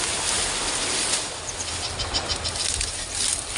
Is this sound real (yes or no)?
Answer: yes